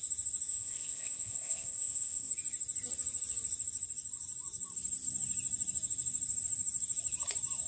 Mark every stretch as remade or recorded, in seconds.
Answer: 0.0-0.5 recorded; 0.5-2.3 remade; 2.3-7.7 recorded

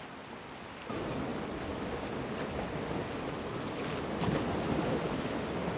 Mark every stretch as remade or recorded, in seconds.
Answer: 0.0-5.8 recorded

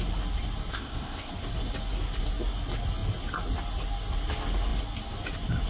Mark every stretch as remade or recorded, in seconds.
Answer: 0.0-0.7 recorded; 0.7-1.3 remade; 1.3-5.7 recorded

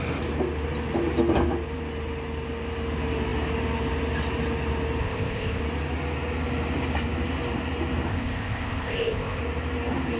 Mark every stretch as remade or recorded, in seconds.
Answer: 0.0-5.0 recorded; 5.0-5.6 remade; 5.6-8.1 recorded; 8.1-9.4 remade; 9.4-10.2 recorded

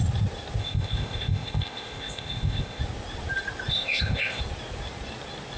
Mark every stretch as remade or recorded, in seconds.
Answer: 0.0-0.6 recorded; 0.6-2.8 remade; 2.8-3.7 recorded; 3.7-4.4 remade; 4.4-5.6 recorded

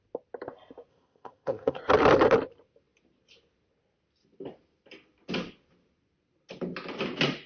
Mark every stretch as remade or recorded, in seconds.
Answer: 0.0-0.9 recorded; 0.9-1.8 remade; 1.8-7.5 recorded